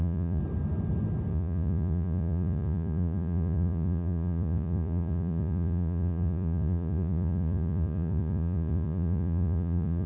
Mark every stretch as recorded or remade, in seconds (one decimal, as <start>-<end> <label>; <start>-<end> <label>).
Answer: 0.0-0.4 remade; 0.4-1.3 recorded; 1.3-10.1 remade